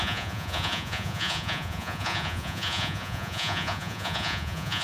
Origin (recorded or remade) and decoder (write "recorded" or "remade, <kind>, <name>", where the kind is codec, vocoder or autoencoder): remade, vocoder, Vocos